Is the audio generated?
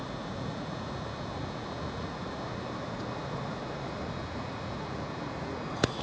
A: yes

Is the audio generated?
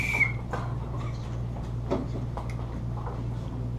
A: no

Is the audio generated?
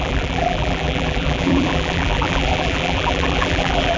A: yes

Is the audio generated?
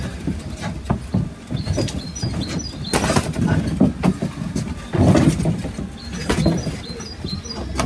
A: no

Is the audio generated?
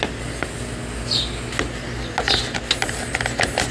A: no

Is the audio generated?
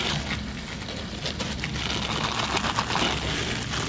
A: no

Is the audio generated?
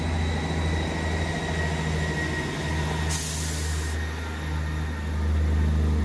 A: no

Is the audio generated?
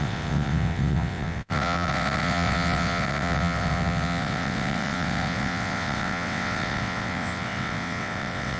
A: yes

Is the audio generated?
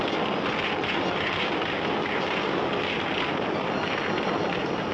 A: no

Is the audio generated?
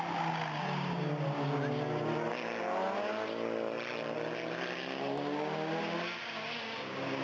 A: no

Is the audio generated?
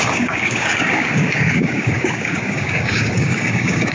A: yes